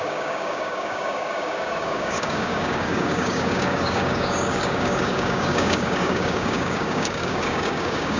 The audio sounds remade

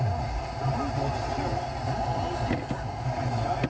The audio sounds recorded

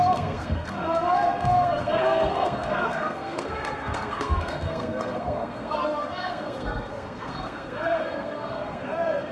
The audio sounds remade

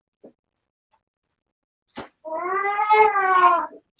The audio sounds recorded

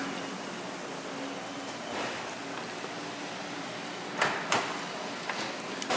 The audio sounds recorded